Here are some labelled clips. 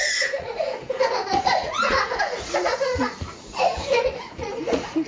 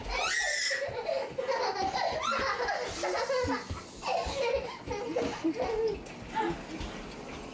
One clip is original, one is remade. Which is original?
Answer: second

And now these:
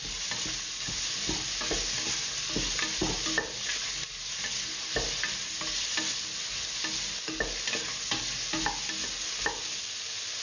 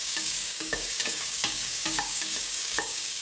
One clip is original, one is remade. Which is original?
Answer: first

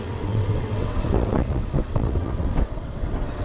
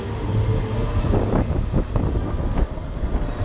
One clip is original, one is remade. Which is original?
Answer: second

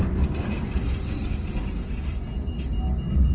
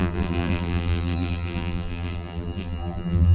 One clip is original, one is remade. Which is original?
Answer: first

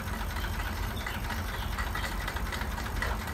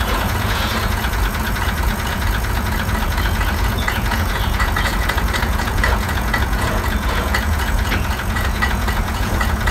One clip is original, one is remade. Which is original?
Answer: first